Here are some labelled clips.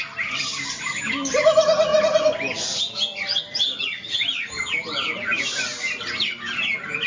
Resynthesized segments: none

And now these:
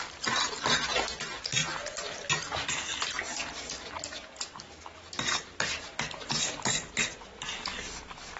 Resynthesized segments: 1.6-2.2 (vocoder, BigVGAN v2)

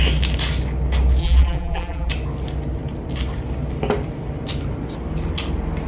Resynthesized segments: 1.2-2.1 (vocoder, BigVGAN v2)

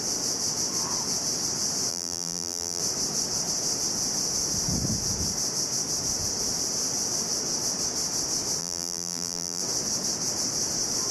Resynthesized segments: 1.9-2.8 (vocoder, BigVGAN v2); 8.6-9.6

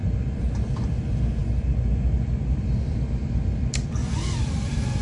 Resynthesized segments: 0.0-4.0 (vocoder, BigVGAN v2); 4.5-5.0

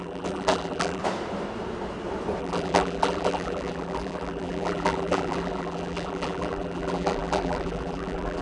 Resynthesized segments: 0.0-1.0 (vocoder, BigVGAN v2); 2.4-8.4

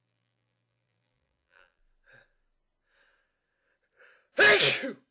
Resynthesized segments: 0.0-1.8 (vocoder, BigVGAN v2)